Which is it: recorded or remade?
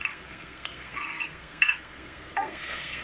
remade